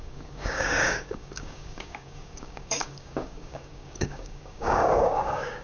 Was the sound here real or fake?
fake